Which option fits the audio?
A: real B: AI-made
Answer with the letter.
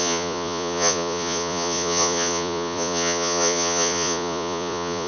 B